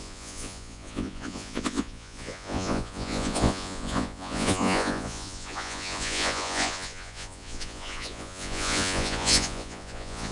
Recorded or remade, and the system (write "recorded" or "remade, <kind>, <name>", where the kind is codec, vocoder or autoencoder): remade, vocoder, Vocos